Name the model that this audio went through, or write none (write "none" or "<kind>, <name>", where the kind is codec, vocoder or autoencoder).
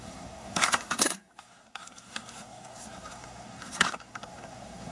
codec, SNAC